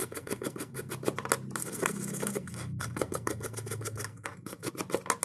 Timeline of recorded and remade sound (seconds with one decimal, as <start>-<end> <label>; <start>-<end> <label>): 0.0-0.9 remade; 0.9-1.6 recorded; 1.6-4.7 remade; 4.7-5.2 recorded

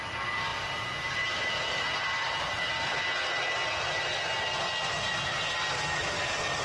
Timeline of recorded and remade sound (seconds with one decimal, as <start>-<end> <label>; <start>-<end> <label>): 0.0-6.6 recorded

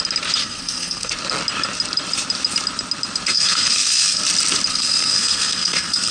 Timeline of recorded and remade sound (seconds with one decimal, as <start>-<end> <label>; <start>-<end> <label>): 0.0-0.4 recorded; 0.4-1.1 remade; 1.1-3.3 recorded; 3.3-4.2 remade; 4.2-4.7 recorded; 4.7-6.1 remade

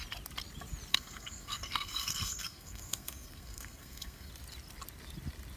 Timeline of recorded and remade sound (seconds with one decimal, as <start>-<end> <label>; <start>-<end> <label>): 0.0-0.9 recorded; 0.9-4.3 remade; 4.3-5.6 recorded

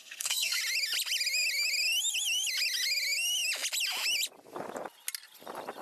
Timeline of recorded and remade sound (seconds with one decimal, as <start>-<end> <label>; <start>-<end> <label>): 0.0-0.6 remade; 0.6-5.8 recorded

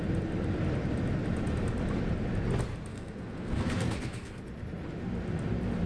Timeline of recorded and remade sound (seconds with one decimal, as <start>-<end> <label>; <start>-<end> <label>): 0.0-2.9 recorded; 2.9-4.4 remade; 4.4-5.9 recorded

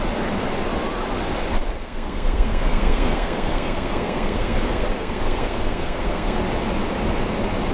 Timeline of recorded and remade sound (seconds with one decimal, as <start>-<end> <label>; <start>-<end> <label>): 0.0-1.8 recorded; 1.8-6.4 remade; 6.4-7.7 recorded

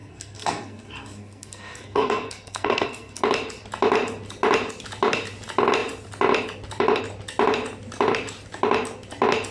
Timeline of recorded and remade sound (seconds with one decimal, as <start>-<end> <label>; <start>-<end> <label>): 0.0-3.2 remade; 3.2-9.5 recorded